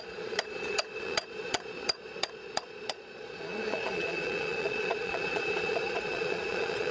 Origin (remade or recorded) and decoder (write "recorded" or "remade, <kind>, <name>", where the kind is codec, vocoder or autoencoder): remade, vocoder, Vocos